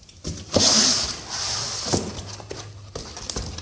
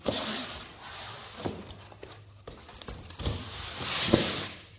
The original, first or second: first